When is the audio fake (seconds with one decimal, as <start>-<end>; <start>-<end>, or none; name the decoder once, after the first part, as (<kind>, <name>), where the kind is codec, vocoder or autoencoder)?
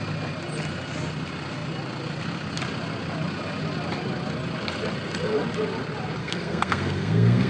6.2-7.5 (codec, SNAC)